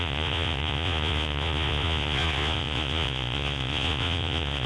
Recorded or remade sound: remade